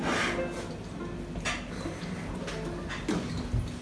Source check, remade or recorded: recorded